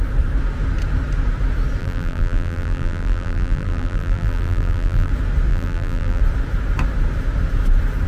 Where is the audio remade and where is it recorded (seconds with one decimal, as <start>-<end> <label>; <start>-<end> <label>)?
0.0-1.8 recorded; 1.8-5.1 remade; 5.1-5.5 recorded; 5.5-6.2 remade; 6.2-8.1 recorded